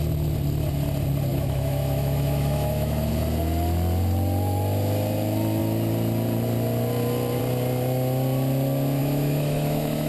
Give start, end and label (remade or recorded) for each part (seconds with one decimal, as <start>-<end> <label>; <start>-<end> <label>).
0.0-1.3 recorded; 1.3-3.1 remade; 3.1-9.0 recorded; 9.0-10.1 remade